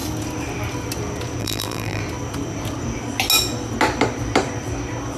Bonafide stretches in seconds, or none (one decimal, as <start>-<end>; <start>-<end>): 0.0-1.4; 2.0-5.2